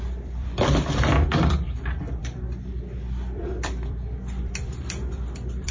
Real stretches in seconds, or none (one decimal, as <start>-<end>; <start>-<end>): none